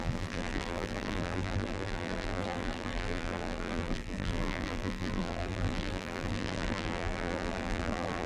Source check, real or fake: fake